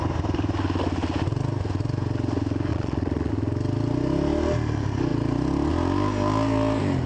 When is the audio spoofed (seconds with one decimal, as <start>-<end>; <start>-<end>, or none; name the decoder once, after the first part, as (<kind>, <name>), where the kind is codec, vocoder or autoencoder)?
2.7-3.3 (vocoder, Vocos)